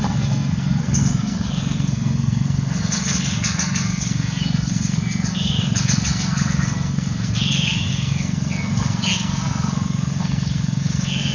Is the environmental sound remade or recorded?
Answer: remade